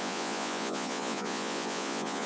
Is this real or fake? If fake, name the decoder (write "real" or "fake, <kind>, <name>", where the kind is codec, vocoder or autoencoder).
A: fake, vocoder, Vocos